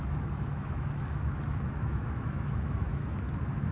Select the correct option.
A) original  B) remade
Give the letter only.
B